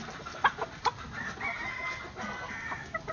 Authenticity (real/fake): real